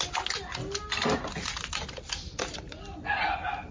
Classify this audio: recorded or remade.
recorded